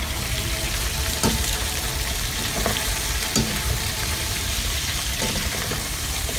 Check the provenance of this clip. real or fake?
fake